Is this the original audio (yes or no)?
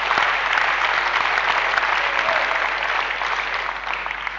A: yes